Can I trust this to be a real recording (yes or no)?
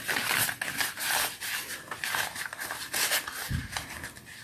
yes